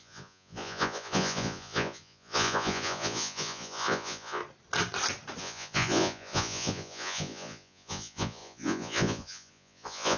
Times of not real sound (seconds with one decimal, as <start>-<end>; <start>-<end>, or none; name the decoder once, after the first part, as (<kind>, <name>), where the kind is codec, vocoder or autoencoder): 0.0-4.4 (vocoder, Vocos); 5.4-10.2